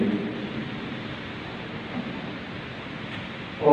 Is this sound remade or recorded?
recorded